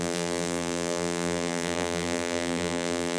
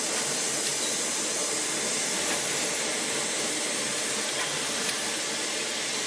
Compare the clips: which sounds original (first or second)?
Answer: second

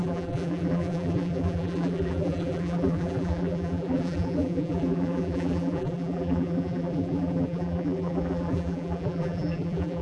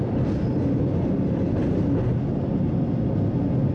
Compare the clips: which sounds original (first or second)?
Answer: second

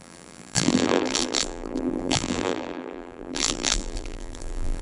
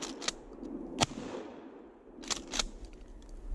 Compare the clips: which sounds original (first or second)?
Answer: second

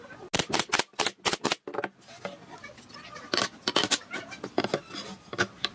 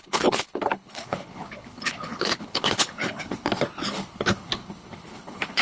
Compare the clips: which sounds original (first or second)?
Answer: first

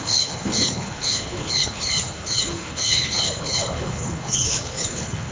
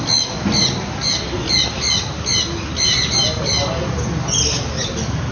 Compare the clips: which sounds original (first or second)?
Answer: second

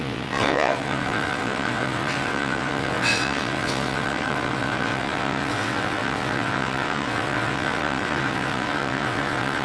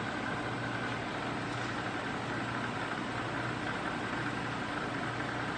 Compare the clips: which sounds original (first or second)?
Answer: second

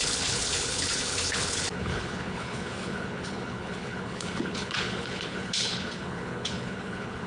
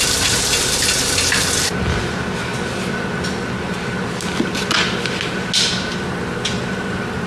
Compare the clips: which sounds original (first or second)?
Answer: second